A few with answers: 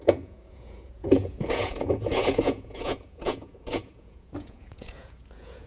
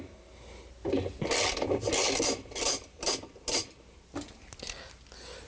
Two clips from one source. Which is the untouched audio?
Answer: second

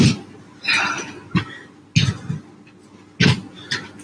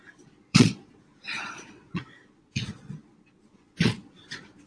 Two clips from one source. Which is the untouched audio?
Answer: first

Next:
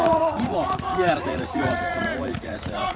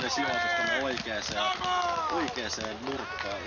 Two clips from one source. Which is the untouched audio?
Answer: second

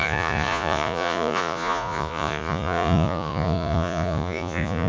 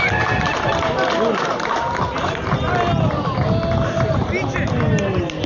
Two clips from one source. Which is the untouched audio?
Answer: second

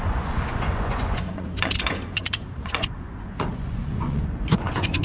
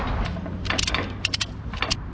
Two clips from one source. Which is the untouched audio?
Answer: second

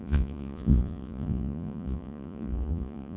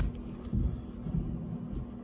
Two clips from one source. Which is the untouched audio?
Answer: second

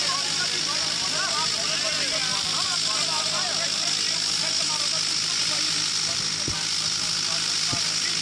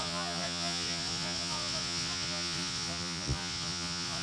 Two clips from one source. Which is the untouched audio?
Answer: first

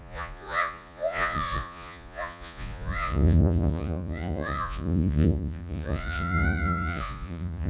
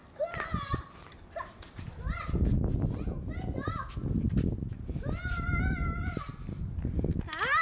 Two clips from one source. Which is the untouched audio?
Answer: second